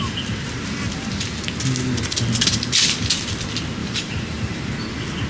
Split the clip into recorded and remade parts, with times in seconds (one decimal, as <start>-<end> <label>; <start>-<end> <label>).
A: 0.0-3.8 recorded; 3.8-4.7 remade; 4.7-5.3 recorded